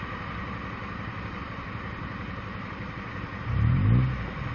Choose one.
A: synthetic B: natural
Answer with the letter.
B